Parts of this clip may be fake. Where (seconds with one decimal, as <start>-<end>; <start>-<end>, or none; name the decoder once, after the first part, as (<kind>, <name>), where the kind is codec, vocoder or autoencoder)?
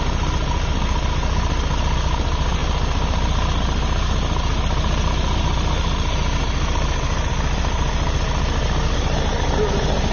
none